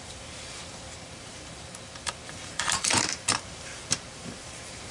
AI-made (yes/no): yes